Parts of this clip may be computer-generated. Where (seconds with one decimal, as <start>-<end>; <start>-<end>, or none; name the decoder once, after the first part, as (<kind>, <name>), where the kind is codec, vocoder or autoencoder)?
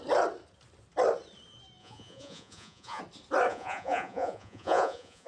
1.8-3.0 (vocoder, Vocos); 3.5-5.3